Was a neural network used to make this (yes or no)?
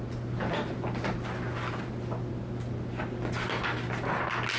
no